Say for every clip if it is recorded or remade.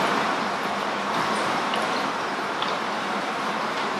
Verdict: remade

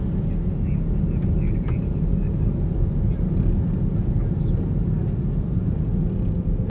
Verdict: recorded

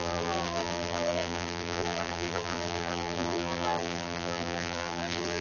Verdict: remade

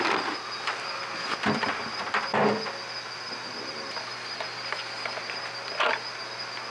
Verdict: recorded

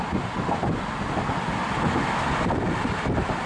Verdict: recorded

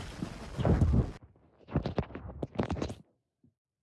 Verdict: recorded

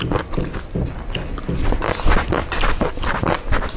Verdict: recorded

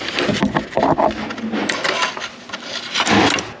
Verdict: recorded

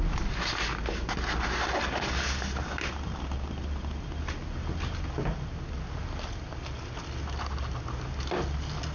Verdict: recorded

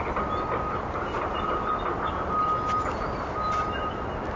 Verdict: recorded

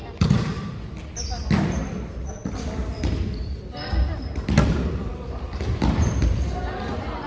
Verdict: recorded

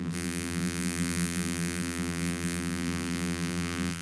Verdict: remade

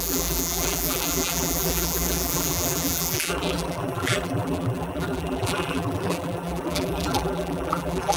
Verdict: remade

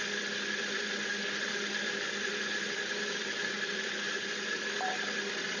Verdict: recorded